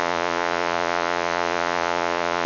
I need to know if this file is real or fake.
fake